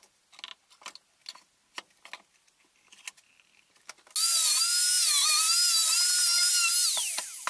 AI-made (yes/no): no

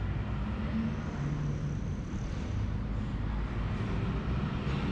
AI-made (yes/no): no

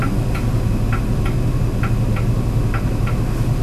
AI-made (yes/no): no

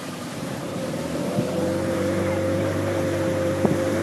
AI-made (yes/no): yes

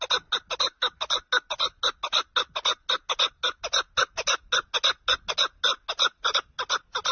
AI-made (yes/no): no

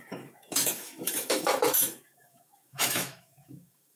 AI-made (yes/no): yes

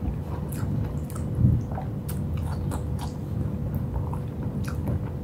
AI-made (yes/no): no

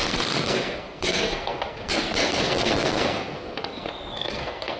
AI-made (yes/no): yes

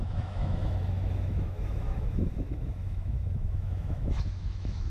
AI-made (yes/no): yes